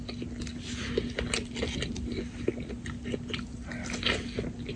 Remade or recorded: recorded